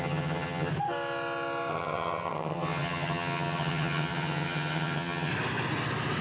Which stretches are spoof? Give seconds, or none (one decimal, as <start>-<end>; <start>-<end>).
0.0-0.7; 1.7-5.3